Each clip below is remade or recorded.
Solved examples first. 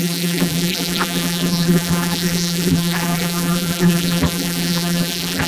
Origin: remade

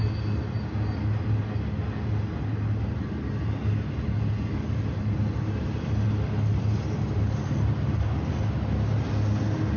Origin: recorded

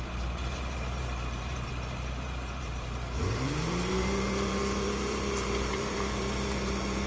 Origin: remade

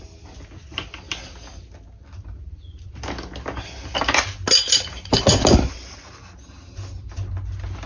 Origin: recorded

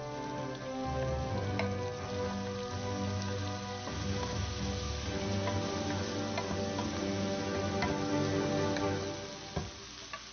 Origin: recorded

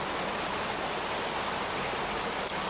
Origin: recorded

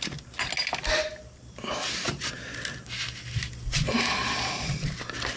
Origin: recorded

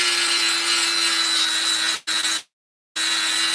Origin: recorded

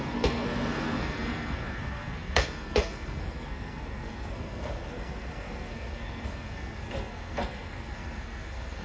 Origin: remade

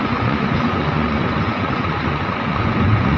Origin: remade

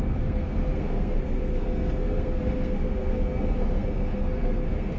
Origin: remade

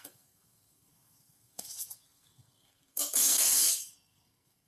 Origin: remade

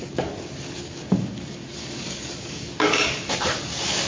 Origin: remade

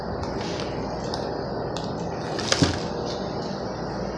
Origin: recorded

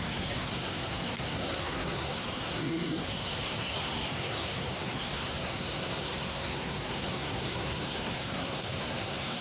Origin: remade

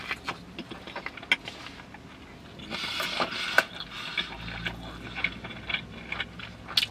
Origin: recorded